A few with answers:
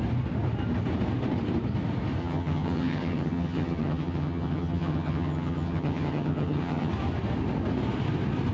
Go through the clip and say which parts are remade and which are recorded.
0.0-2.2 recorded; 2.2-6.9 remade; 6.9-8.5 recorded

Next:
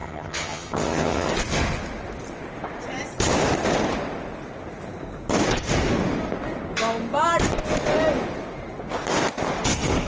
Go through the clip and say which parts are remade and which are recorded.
0.0-1.3 remade; 1.3-10.1 recorded

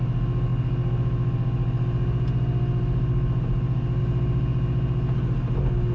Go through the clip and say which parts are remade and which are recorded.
0.0-5.9 recorded

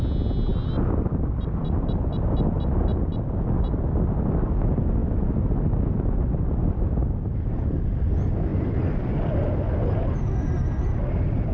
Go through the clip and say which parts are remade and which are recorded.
0.0-11.5 recorded

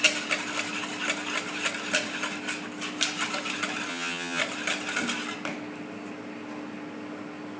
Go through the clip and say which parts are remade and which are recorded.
0.0-3.9 recorded; 3.9-4.4 remade; 4.4-7.6 recorded

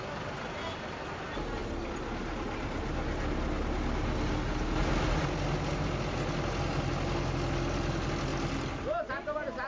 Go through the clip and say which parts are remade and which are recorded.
0.0-9.7 recorded